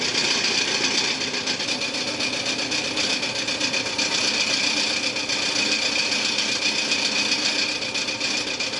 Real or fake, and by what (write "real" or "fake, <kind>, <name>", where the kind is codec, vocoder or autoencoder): real